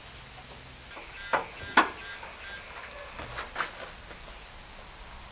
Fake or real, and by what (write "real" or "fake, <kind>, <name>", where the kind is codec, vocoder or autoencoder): real